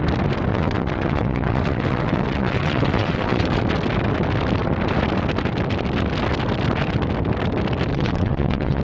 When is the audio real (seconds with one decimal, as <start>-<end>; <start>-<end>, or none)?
0.0-0.5; 3.6-7.9